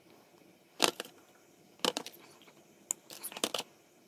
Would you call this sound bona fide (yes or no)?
yes